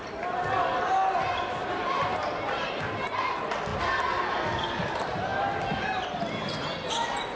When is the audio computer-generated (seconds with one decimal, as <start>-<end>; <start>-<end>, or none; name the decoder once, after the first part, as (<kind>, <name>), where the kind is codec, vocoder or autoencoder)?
none